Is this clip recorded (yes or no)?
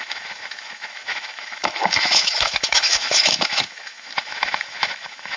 no